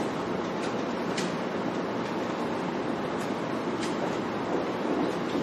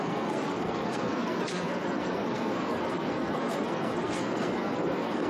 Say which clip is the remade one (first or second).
second